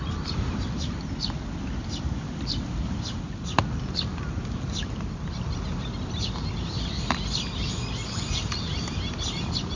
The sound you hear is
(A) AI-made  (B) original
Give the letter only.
B